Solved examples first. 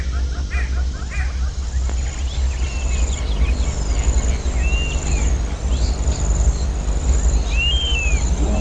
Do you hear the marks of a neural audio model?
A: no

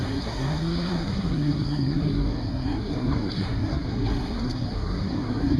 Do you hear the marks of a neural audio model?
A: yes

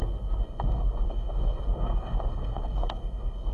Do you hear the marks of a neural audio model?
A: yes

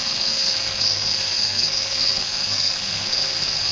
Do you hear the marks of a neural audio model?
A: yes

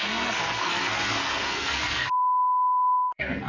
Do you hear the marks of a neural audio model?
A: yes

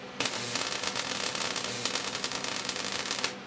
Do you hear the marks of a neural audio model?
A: no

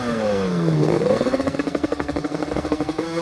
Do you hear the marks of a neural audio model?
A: yes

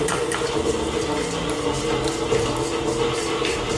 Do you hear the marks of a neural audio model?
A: no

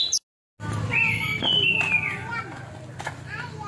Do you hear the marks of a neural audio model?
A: no